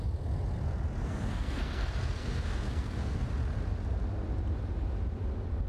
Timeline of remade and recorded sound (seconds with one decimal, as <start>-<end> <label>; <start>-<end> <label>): 0.0-1.0 recorded; 1.0-3.3 remade; 3.3-5.7 recorded